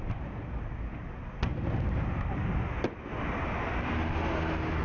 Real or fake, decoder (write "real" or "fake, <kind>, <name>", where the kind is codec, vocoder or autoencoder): real